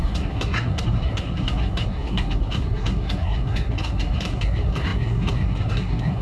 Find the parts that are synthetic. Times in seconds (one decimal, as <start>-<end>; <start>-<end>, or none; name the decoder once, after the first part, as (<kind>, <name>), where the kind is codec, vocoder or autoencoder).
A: 0.0-6.2 (codec, SNAC)